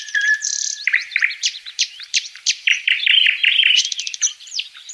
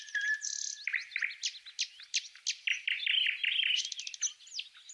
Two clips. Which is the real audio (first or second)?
second